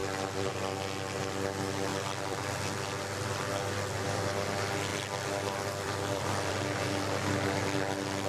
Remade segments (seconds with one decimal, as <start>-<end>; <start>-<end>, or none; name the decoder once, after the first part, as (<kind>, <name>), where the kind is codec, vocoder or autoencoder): 1.9-2.6 (vocoder, BigVGAN v2); 4.9-6.5